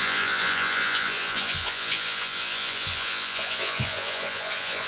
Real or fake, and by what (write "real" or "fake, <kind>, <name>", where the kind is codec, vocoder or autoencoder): fake, vocoder, Vocos